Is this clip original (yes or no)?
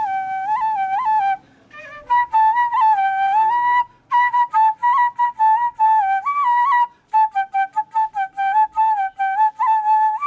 yes